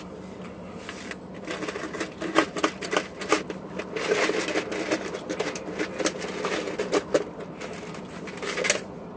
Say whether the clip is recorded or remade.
recorded